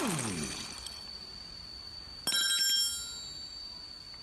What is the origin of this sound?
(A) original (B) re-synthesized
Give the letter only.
A